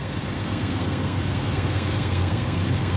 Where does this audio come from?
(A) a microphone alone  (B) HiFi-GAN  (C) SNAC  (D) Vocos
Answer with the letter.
C